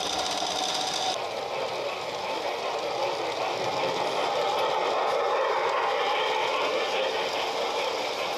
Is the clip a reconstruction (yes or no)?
no